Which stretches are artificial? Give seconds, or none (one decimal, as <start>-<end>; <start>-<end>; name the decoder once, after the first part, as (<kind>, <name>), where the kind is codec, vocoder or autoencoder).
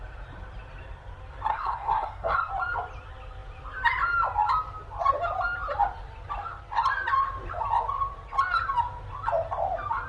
1.5-2.5 (codec, SNAC)